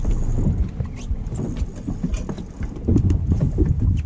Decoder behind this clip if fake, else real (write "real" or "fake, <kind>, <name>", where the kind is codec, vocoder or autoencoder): real